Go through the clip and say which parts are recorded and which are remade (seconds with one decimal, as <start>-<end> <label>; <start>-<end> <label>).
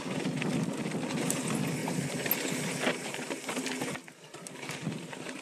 0.0-5.4 recorded